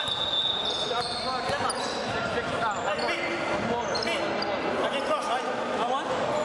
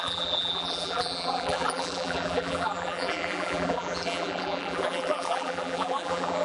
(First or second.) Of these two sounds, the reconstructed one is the second